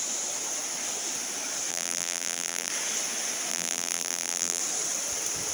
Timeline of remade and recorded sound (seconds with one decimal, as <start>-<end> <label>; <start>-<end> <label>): 0.0-1.7 recorded; 1.7-2.7 remade; 2.7-3.5 recorded; 3.5-4.6 remade; 4.6-5.5 recorded